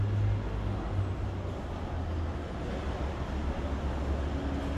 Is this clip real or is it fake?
real